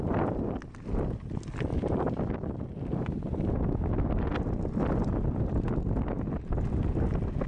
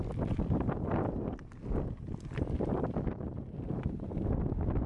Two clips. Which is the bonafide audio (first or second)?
first